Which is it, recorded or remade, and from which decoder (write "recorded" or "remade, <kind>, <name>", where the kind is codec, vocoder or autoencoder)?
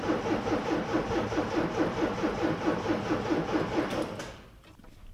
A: remade, vocoder, BigVGAN v2